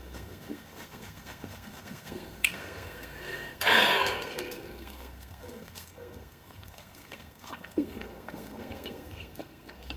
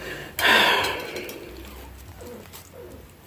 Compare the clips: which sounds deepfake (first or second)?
first